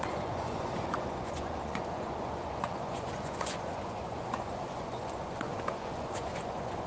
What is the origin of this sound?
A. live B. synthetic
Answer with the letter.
B